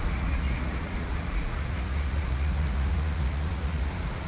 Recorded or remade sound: remade